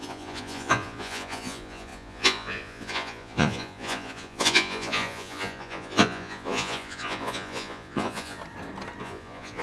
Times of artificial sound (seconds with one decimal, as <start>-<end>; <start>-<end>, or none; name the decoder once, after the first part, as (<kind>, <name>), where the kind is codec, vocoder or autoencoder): 0.0-8.4 (vocoder, Vocos); 9.0-9.6